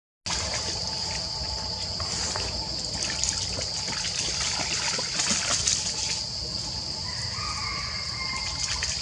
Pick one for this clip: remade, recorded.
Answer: recorded